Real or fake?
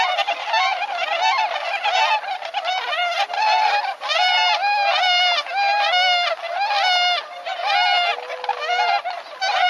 real